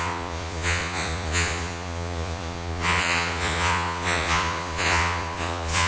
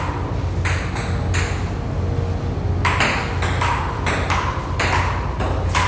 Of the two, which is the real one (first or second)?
second